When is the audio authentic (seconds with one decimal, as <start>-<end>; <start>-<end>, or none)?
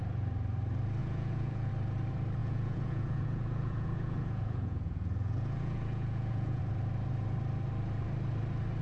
0.0-1.0; 1.7-2.4; 6.6-8.8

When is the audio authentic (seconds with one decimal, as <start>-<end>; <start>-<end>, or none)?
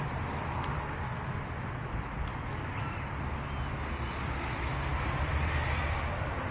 0.0-6.5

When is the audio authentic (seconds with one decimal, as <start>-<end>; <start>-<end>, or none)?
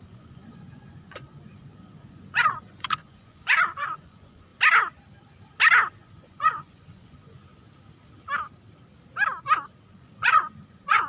4.5-5.9; 7.4-9.9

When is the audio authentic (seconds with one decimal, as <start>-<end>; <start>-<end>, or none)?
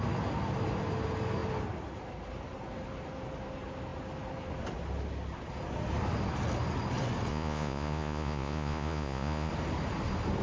0.0-7.3; 9.5-10.4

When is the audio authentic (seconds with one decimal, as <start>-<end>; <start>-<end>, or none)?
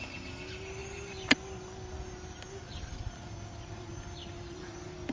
0.0-5.1